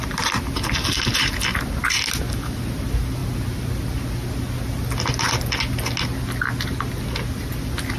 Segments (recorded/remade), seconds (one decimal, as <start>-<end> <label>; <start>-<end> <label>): 0.0-8.0 recorded